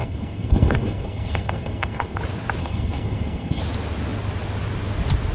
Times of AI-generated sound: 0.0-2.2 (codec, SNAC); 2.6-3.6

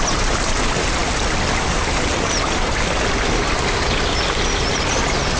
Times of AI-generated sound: none

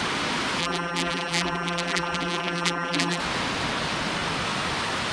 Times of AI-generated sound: 0.6-3.2 (vocoder, BigVGAN v2)